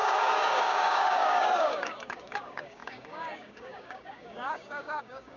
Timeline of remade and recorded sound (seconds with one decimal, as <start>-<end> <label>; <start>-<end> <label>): 0.0-5.4 remade